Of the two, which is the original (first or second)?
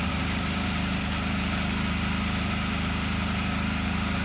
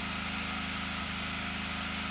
second